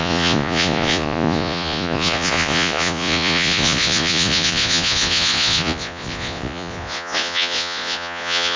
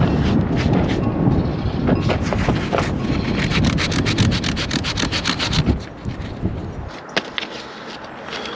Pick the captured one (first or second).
second